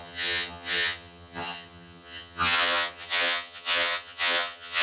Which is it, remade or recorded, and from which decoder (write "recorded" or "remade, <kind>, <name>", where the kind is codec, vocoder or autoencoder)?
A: remade, vocoder, HiFi-GAN